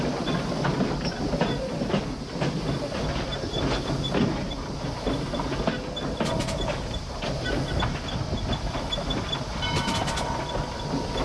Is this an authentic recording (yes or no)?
yes